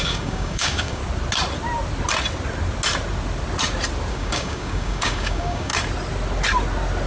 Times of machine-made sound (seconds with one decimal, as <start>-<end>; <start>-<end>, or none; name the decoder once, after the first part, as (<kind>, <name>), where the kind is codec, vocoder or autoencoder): 0.0-1.0 (codec, DAC); 4.1-5.7